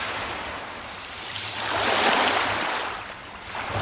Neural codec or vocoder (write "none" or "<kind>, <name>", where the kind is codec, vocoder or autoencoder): none